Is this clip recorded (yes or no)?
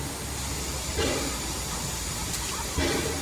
yes